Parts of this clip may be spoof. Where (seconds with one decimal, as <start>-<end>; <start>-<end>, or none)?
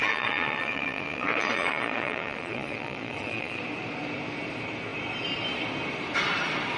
0.0-3.6